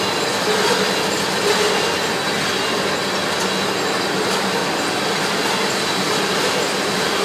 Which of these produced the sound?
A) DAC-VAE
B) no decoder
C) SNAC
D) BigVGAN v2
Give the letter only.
B